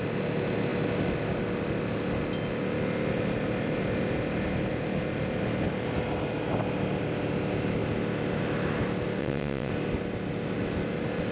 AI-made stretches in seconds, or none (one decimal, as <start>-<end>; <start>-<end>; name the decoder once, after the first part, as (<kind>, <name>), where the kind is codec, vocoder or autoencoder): 9.2-9.7 (vocoder, WaveNeXt)